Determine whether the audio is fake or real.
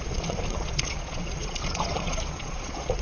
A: fake